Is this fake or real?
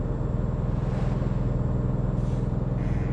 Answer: real